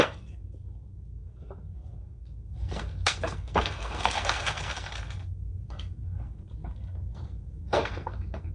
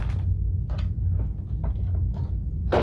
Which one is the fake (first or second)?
first